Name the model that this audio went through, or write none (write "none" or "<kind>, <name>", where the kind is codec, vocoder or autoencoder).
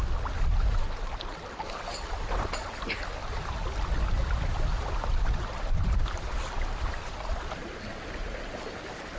none